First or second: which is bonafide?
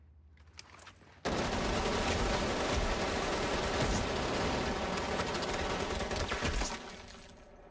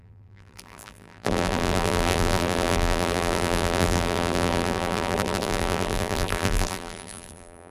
first